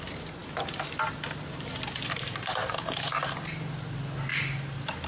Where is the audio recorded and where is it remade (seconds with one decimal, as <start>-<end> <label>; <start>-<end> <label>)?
0.0-2.6 recorded; 2.6-3.2 remade; 3.2-5.1 recorded